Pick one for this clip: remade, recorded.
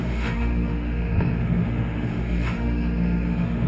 remade